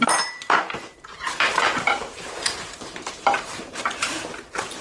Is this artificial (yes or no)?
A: yes